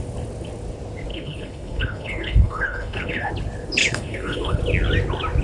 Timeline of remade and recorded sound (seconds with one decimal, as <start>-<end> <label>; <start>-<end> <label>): 0.0-1.1 recorded; 1.1-3.3 remade; 3.3-3.8 recorded; 3.8-4.6 remade; 4.6-5.4 recorded